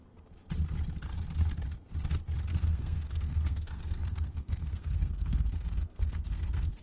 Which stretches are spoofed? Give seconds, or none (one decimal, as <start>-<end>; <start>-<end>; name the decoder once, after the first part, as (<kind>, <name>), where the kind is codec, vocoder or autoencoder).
2.5-6.8 (codec, SNAC)